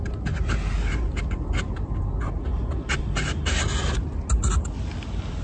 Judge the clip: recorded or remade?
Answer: recorded